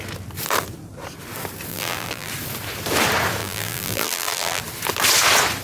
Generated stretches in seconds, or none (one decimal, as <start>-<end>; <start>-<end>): 1.7-2.3; 3.4-4.6